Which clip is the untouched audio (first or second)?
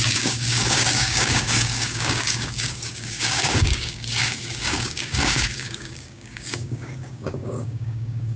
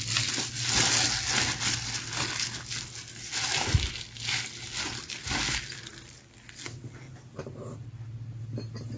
second